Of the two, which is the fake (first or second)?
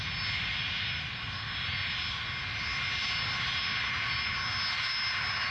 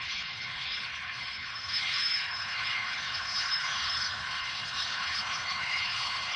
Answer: second